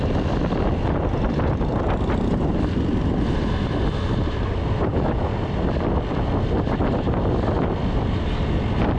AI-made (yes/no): yes